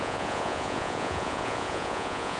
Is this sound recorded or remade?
remade